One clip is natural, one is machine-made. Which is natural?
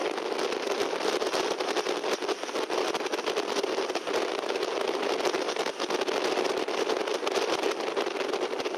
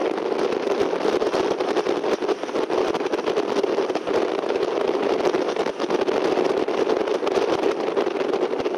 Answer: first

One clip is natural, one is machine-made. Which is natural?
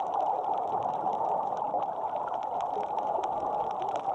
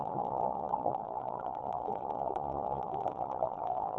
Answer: first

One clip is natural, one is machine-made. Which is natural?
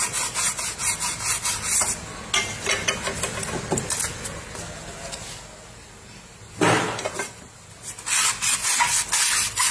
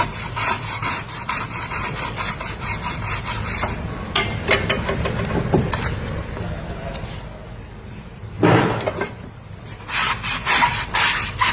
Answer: first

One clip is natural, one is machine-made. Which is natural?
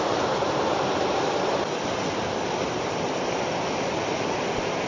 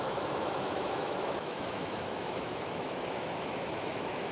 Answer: first